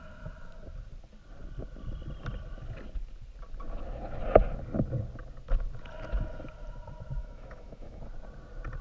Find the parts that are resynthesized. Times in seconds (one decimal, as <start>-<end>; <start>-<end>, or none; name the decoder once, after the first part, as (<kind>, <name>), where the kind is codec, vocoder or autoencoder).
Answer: 7.2-8.0 (autoencoder, DAC-VAE)